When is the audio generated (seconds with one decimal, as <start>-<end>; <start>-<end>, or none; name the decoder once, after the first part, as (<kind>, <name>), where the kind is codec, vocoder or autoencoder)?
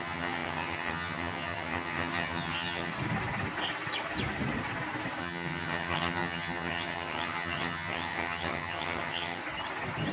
0.0-2.9 (vocoder, HiFi-GAN); 5.2-9.4